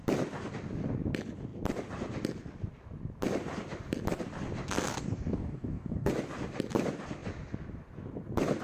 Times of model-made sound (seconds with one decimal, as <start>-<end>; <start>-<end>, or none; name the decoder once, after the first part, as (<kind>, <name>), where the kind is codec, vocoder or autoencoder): 4.9-6.1 (codec, DAC)